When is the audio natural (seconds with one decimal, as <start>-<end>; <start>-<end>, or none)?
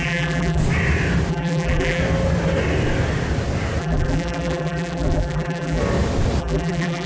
0.6-1.3; 2.0-3.8; 5.8-6.4